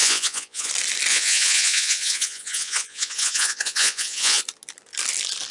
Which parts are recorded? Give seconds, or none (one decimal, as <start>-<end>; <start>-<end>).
0.7-1.1; 4.4-5.5